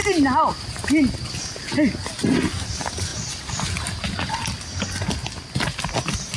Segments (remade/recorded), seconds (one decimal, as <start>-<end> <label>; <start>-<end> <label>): 0.0-6.4 recorded